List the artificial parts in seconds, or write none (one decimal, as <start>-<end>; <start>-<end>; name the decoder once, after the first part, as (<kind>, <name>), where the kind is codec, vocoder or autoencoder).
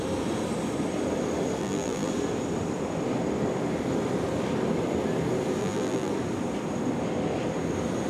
1.6-2.1 (vocoder, BigVGAN v2); 5.6-6.1